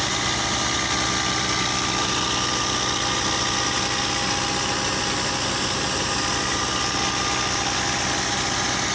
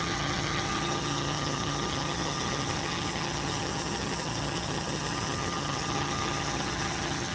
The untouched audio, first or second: first